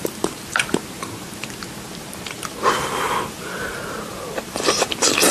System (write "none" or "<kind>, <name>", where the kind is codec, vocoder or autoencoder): vocoder, BigVGAN v2